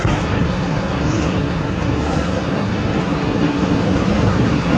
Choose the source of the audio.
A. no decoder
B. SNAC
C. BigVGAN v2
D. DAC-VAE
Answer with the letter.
B